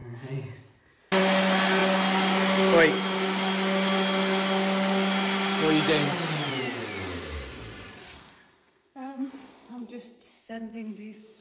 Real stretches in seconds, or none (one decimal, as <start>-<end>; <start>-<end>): 0.0-8.0; 9.8-10.3